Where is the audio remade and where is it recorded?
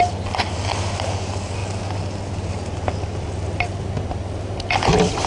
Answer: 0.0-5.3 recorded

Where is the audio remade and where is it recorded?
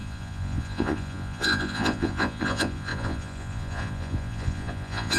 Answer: 0.0-5.2 remade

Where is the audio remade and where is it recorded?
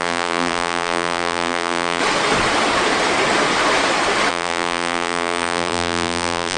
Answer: 0.0-2.0 remade; 2.0-4.3 recorded; 4.3-6.6 remade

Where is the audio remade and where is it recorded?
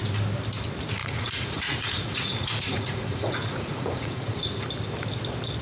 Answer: 0.0-1.0 recorded; 1.0-4.4 remade; 4.4-5.6 recorded